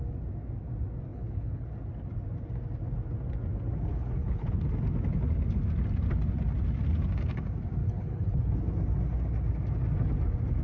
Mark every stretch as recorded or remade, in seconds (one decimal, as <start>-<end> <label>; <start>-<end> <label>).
0.0-1.1 recorded; 1.1-1.7 remade; 1.7-3.9 recorded; 3.9-4.6 remade; 4.6-7.8 recorded; 7.8-8.5 remade; 8.5-10.6 recorded